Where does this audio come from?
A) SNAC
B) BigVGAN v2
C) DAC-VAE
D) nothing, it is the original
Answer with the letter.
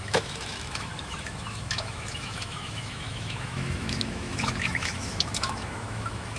C